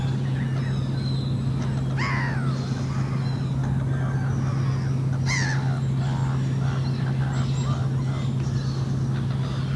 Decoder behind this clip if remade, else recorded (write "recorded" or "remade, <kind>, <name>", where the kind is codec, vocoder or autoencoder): recorded